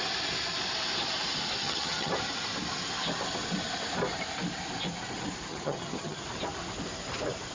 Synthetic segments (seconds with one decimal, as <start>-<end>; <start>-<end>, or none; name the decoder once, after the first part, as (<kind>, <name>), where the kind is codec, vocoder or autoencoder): 1.6-2.1 (vocoder, HiFi-GAN); 5.5-6.2